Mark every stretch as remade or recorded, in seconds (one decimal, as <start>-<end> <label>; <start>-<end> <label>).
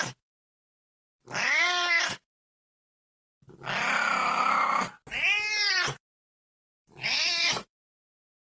0.0-2.4 remade; 2.4-5.7 recorded; 5.7-8.4 remade